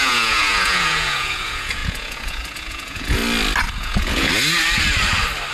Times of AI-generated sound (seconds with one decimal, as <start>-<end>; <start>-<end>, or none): 0.0-3.2; 3.7-4.3